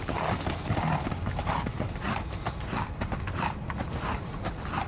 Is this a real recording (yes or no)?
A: yes